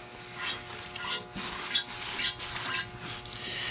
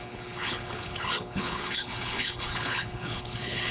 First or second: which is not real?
second